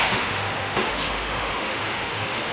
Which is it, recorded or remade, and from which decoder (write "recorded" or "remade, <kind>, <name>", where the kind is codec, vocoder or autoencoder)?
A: remade, autoencoder, DAC-VAE